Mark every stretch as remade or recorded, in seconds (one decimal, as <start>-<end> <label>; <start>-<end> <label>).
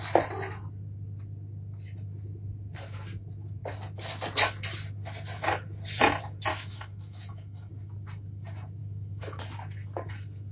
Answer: 0.0-6.5 recorded; 6.5-7.7 remade; 7.7-8.8 recorded; 8.8-9.4 remade; 9.4-10.5 recorded